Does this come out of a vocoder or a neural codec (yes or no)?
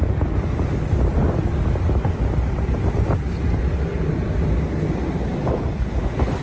no